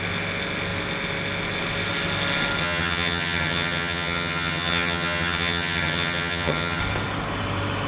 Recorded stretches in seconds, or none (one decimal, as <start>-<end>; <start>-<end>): 0.0-2.6; 6.8-7.9